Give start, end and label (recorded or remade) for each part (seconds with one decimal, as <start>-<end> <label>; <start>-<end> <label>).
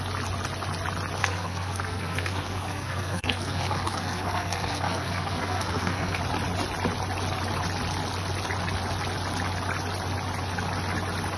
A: 0.0-1.2 recorded; 1.2-6.2 remade; 6.2-11.4 recorded